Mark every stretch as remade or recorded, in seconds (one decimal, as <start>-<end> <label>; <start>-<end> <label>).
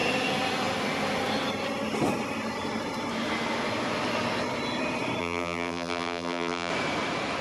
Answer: 0.0-5.2 recorded; 5.2-6.7 remade; 6.7-7.4 recorded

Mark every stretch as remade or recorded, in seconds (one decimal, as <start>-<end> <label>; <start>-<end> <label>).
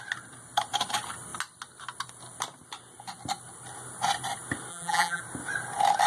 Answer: 0.0-4.7 recorded; 4.7-5.2 remade; 5.2-6.1 recorded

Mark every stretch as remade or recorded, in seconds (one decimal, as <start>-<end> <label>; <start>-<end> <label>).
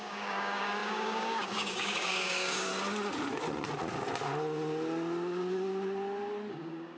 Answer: 0.0-2.7 remade; 2.7-6.5 recorded; 6.5-7.0 remade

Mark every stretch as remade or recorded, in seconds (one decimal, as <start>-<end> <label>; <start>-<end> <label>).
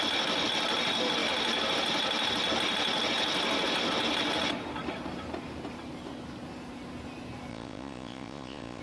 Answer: 0.0-7.5 recorded; 7.5-8.8 remade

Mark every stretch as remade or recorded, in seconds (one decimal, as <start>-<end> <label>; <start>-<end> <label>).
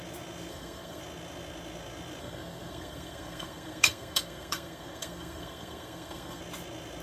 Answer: 0.0-0.5 recorded; 0.5-1.0 remade; 1.0-2.2 recorded; 2.2-6.4 remade; 6.4-7.0 recorded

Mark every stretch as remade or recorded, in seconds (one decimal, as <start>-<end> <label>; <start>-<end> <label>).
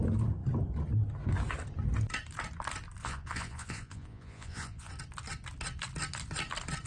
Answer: 0.0-3.0 recorded; 3.0-4.9 remade; 4.9-6.9 recorded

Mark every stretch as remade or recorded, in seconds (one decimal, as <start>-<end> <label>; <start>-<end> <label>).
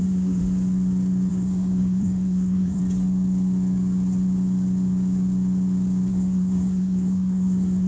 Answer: 0.0-0.4 remade; 0.4-1.3 recorded; 1.3-2.8 remade; 2.8-6.1 recorded; 6.1-7.9 remade